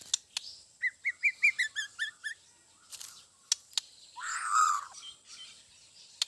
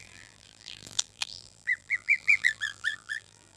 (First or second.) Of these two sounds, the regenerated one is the second